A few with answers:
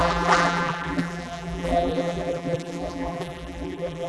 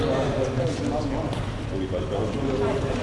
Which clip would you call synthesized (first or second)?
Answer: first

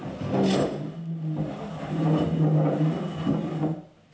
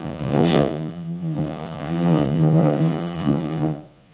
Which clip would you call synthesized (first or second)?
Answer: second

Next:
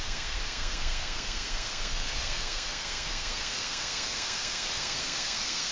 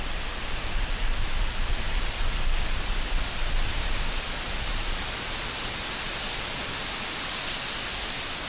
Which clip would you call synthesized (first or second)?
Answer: first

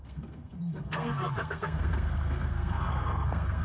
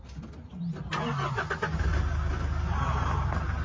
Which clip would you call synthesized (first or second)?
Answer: first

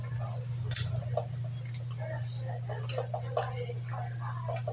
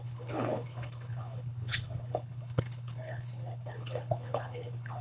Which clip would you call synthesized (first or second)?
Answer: second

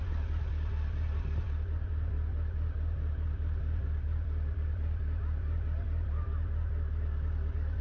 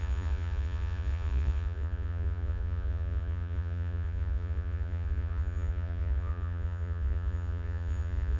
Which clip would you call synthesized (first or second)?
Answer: second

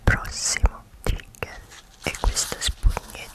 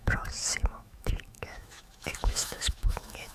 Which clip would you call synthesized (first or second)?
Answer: second